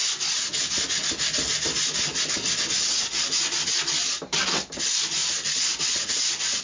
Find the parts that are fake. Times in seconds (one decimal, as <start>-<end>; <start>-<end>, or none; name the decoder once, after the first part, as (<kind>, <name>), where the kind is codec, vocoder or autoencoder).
none